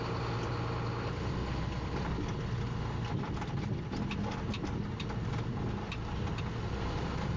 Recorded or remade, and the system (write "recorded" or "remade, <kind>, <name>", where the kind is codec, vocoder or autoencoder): recorded